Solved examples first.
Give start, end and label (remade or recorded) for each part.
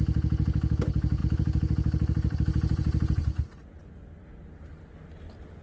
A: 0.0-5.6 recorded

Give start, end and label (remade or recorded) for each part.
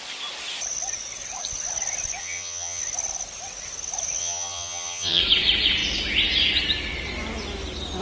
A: 0.0-2.2 recorded; 2.2-2.8 remade; 2.8-4.2 recorded; 4.2-5.2 remade; 5.2-8.0 recorded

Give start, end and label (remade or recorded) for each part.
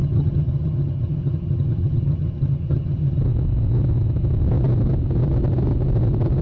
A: 0.0-3.2 remade; 3.2-6.4 recorded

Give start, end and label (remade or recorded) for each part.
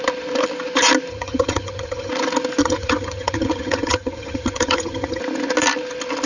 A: 0.0-1.1 recorded; 1.1-2.1 remade; 2.1-2.6 recorded; 2.6-5.2 remade; 5.2-6.3 recorded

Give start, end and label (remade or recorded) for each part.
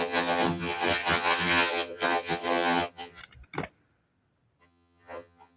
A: 0.0-3.2 remade; 3.2-4.6 recorded; 4.6-5.6 remade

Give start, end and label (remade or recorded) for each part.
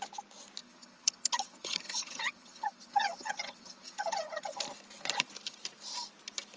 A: 0.0-0.6 recorded; 0.6-4.6 remade; 4.6-6.6 recorded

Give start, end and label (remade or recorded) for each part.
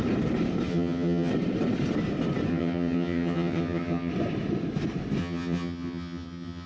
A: 0.0-0.7 recorded; 0.7-1.3 remade; 1.3-2.5 recorded; 2.5-4.1 remade; 4.1-5.2 recorded; 5.2-6.7 remade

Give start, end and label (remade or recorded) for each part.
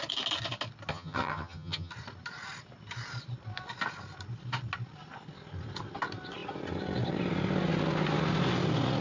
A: 0.0-0.9 recorded; 0.9-1.9 remade; 1.9-9.0 recorded